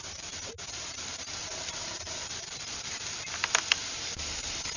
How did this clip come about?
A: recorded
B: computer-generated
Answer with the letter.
B